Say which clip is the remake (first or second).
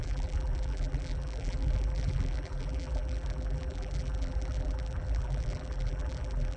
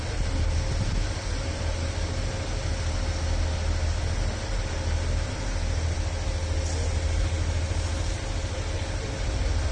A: first